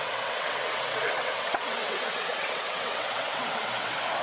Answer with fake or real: fake